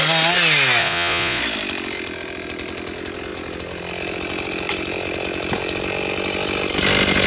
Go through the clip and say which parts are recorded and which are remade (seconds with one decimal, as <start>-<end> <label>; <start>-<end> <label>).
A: 0.0-0.8 recorded; 0.8-1.4 remade; 1.4-7.3 recorded